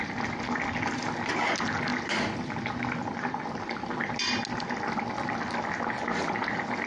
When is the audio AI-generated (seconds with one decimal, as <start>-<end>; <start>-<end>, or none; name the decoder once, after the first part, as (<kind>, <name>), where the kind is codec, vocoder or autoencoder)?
none